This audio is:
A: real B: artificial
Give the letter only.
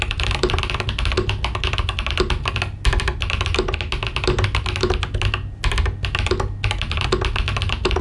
A